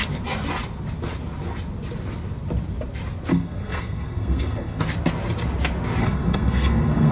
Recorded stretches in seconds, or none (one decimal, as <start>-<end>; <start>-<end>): 0.0-3.3; 4.8-6.0